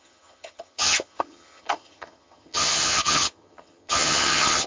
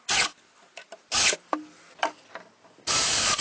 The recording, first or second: second